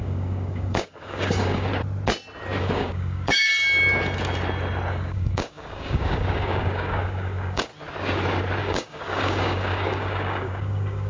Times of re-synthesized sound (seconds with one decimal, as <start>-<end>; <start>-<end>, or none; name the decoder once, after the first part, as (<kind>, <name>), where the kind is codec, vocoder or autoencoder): 0.0-1.7 (codec, DAC); 2.6-3.5; 4.9-7.7; 8.6-11.1